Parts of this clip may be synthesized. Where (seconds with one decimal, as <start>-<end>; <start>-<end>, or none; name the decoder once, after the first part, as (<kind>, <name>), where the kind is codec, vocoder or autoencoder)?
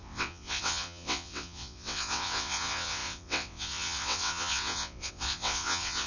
0.0-6.1 (vocoder, WaveNeXt)